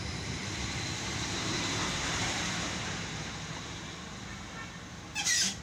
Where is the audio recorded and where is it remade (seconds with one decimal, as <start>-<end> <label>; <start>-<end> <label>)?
0.0-0.4 recorded; 0.4-3.8 remade; 3.8-5.6 recorded